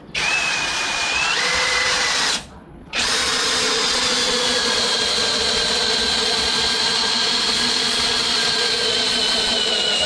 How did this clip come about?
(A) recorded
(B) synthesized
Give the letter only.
B